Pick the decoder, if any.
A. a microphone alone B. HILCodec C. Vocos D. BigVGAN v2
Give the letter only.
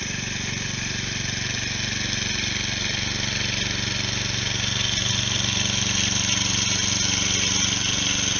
A